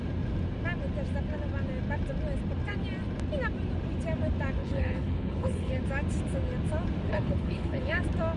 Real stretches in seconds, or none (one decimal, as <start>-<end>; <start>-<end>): 0.0-4.6; 5.7-7.1; 7.9-8.4